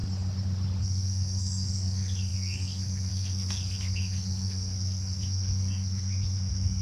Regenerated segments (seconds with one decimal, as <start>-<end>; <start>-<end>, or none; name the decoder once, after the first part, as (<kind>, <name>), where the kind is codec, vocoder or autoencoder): 0.8-6.8 (codec, SNAC)